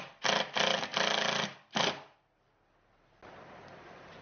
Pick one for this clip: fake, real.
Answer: real